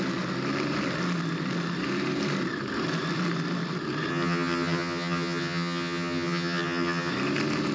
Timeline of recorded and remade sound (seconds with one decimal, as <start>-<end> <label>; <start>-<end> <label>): 0.0-4.1 recorded; 4.1-7.1 remade; 7.1-7.7 recorded